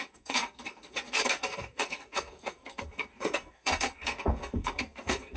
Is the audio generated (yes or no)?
yes